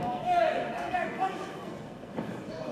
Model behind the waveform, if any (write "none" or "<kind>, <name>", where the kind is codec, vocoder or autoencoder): codec, SNAC